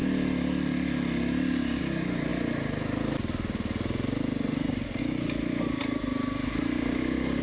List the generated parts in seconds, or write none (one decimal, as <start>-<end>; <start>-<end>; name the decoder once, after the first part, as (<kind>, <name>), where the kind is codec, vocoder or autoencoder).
none

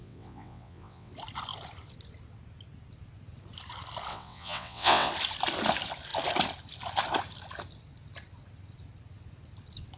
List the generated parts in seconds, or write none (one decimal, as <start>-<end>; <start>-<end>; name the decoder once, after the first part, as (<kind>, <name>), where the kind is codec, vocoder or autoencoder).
0.0-1.1 (vocoder, WaveNeXt); 4.1-5.1

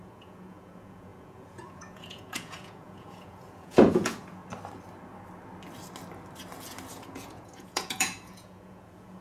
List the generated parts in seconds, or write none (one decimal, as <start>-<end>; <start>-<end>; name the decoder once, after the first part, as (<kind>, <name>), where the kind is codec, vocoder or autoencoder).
0.0-4.4 (vocoder, Vocos); 6.9-9.2

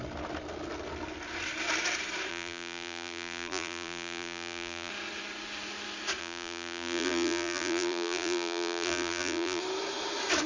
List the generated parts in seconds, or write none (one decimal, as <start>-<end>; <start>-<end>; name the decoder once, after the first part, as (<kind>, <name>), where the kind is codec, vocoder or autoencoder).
2.3-4.9 (vocoder, BigVGAN v2); 6.2-9.6

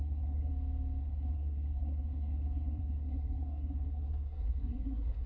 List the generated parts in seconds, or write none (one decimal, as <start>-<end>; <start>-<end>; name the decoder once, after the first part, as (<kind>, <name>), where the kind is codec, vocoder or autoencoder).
0.0-0.5 (codec, SNAC); 1.0-5.3